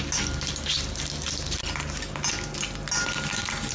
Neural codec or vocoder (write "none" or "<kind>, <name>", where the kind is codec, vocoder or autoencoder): none